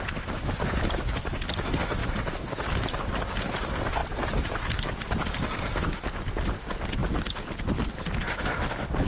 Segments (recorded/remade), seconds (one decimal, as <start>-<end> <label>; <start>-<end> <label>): 0.0-2.0 recorded; 2.0-3.2 remade; 3.2-4.0 recorded; 4.0-5.8 remade; 5.8-9.1 recorded